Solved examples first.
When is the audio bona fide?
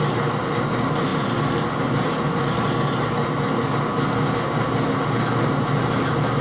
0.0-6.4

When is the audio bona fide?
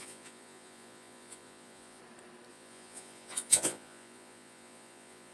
2.0-2.5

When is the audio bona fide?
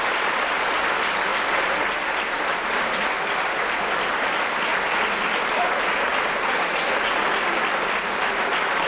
1.3-2.7; 6.1-7.2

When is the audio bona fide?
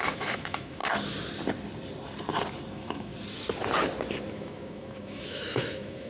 0.8-2.7; 3.1-4.3